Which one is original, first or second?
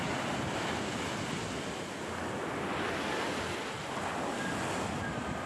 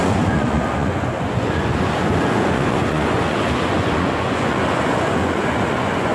first